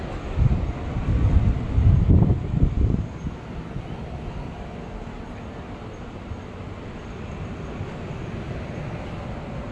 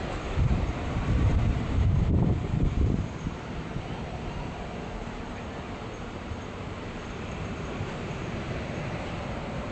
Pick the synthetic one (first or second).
second